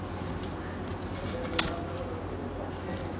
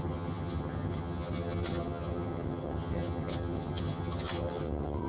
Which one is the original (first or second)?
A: first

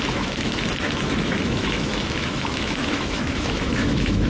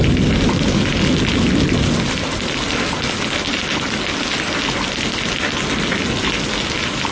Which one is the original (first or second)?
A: second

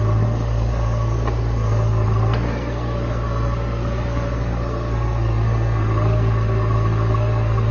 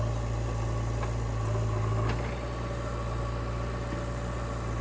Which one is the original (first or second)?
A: second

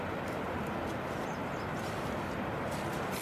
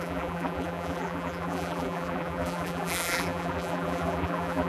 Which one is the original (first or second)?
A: first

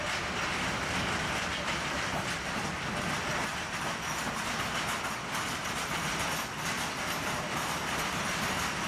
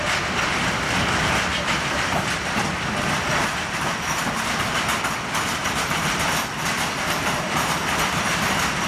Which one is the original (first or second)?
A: first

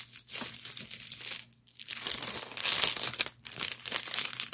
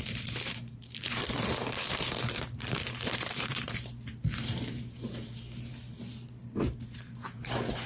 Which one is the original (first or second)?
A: first